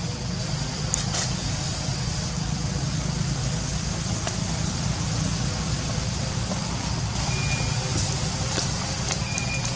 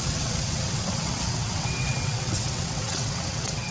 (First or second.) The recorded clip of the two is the first